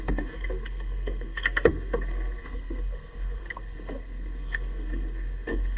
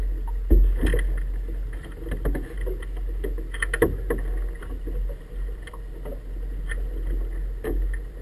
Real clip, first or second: second